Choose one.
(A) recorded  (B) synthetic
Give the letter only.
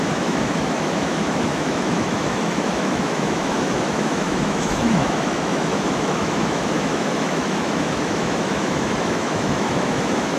B